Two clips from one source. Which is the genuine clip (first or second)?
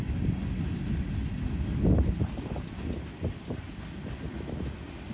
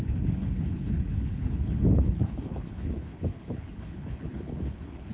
first